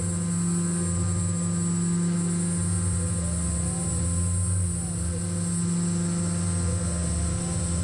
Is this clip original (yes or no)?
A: yes